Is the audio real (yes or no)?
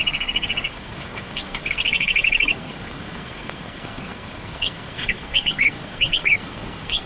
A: no